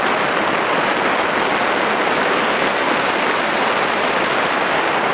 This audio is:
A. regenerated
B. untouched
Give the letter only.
B